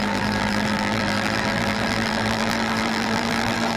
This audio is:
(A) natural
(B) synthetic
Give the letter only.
B